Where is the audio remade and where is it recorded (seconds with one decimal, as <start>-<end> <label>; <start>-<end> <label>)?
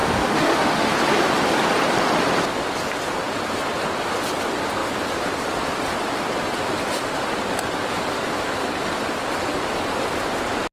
0.0-0.9 remade; 0.9-10.7 recorded